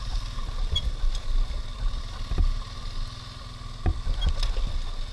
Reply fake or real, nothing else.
real